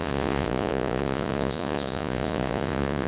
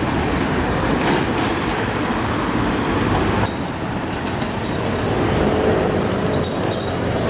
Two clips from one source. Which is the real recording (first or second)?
second